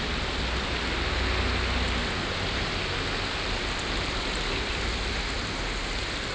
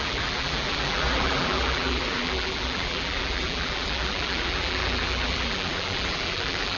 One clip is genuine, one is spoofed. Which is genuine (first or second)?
first